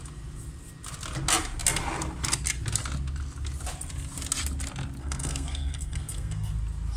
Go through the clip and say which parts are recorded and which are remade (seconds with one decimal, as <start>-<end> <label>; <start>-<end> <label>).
0.0-5.0 recorded; 5.0-6.5 remade; 6.5-7.0 recorded